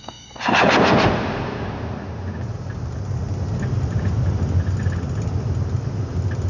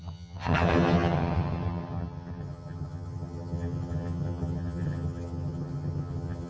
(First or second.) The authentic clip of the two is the first